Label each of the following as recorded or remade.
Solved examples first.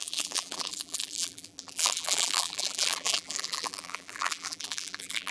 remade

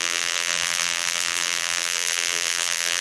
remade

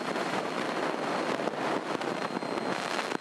recorded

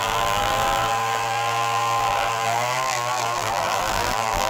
remade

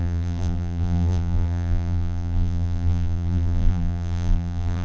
remade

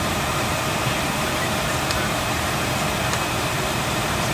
remade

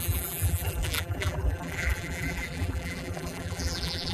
remade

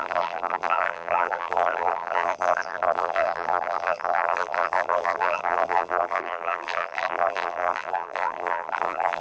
remade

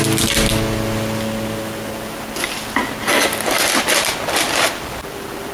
recorded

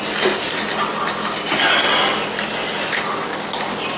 recorded